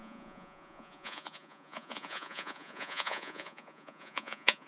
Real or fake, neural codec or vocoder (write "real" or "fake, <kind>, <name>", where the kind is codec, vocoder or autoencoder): fake, vocoder, Vocos